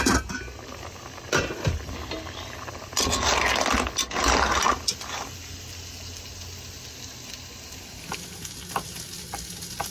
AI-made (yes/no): no